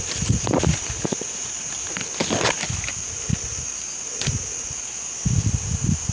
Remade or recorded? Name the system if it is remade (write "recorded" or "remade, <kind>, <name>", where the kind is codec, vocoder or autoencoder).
recorded